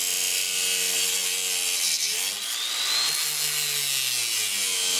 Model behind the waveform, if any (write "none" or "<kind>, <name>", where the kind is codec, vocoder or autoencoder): none